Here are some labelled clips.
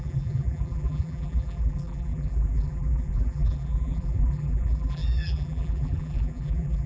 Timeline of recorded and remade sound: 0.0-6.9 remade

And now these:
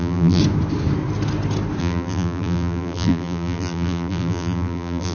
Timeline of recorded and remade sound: 0.0-0.4 remade; 0.4-1.8 recorded; 1.8-5.1 remade

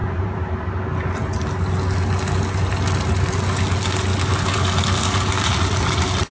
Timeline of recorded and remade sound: 0.0-0.7 remade; 0.7-4.1 recorded; 4.1-6.3 remade

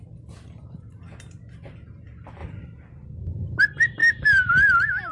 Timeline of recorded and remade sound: 0.0-2.4 recorded; 2.4-3.6 remade; 3.6-4.0 recorded; 4.0-4.5 remade; 4.5-5.1 recorded